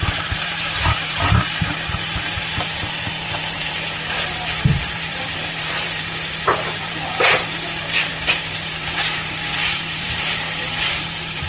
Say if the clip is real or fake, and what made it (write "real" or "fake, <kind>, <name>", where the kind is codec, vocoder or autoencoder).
fake, vocoder, BigVGAN v2